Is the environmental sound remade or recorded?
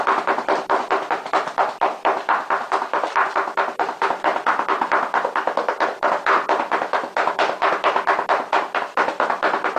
recorded